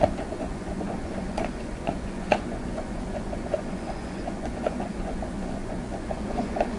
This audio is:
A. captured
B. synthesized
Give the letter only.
B